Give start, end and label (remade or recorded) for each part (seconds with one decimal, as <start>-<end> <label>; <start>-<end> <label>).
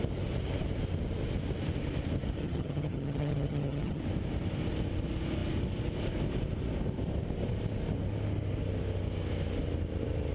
0.0-2.4 recorded; 2.4-4.0 remade; 4.0-10.3 recorded